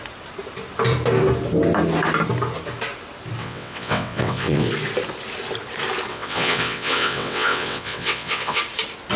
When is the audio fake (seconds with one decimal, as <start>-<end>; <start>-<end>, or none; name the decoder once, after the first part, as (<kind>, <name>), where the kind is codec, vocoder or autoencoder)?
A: 3.4-4.7 (vocoder, WaveNeXt); 6.1-8.6